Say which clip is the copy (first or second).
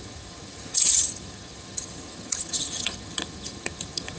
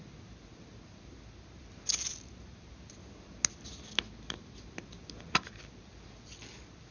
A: first